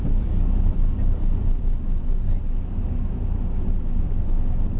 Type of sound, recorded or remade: recorded